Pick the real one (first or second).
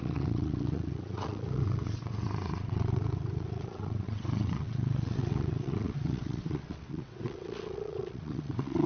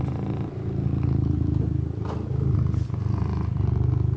second